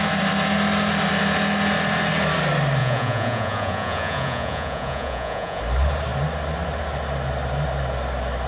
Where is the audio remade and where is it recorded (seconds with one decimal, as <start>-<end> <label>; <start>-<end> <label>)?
0.0-2.8 recorded; 2.8-5.6 remade; 5.6-8.5 recorded